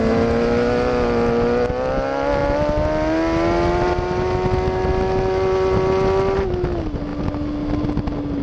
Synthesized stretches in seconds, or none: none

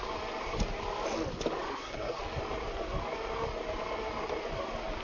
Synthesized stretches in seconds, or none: 1.7-2.2 (codec, SNAC)